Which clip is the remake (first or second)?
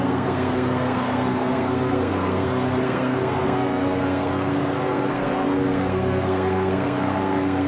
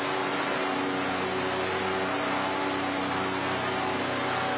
first